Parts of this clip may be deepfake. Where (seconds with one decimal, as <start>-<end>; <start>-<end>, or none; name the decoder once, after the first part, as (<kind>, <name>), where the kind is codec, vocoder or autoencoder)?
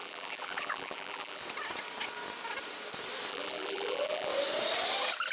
0.0-1.4 (vocoder, BigVGAN v2); 3.3-4.3